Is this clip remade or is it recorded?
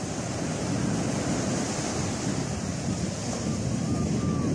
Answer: recorded